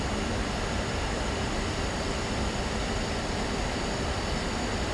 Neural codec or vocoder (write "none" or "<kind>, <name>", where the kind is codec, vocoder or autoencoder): none